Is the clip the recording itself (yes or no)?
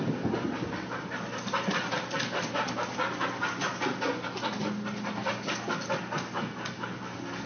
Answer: yes